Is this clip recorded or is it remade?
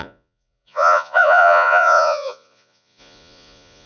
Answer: remade